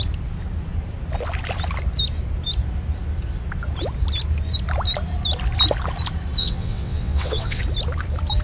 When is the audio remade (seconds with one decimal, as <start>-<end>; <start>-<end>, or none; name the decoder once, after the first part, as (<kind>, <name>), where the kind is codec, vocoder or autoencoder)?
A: 6.4-7.6 (vocoder, WaveNeXt)